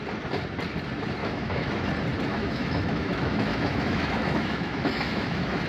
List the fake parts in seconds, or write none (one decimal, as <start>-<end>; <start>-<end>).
1.2-1.9; 2.3-5.7